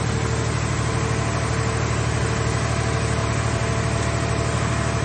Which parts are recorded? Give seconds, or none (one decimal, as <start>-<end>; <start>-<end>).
0.0-3.2; 4.0-5.0